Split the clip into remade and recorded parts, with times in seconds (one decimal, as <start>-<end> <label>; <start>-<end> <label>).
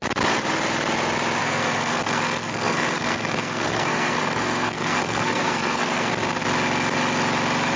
0.0-1.4 recorded; 1.4-6.1 remade; 6.1-7.8 recorded